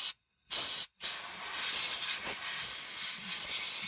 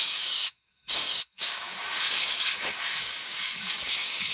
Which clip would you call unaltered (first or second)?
first